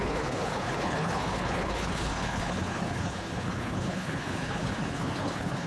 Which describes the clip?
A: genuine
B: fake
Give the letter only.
B